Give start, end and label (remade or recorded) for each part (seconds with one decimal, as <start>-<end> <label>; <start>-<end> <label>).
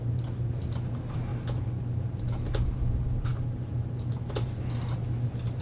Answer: 0.0-5.6 recorded